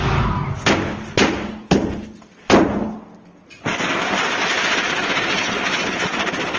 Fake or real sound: real